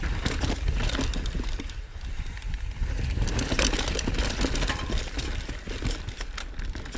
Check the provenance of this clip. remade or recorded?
recorded